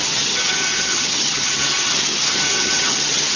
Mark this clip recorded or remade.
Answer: remade